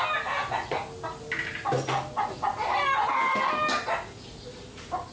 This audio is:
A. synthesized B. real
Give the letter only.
B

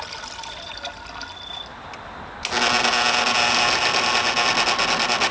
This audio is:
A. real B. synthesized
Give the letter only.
A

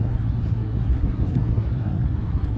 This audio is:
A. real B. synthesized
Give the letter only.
B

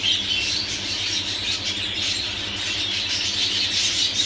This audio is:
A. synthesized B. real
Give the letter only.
B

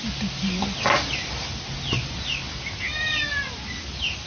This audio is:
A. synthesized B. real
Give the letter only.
B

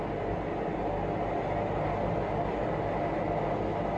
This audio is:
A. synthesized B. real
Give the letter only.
B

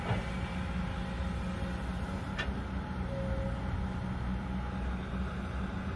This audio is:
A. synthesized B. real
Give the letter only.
B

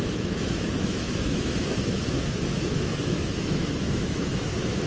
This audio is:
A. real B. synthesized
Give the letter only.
B